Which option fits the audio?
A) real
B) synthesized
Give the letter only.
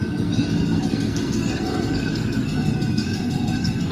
B